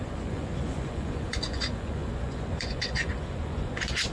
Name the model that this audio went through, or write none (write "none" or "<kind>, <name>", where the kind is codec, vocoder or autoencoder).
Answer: vocoder, Vocos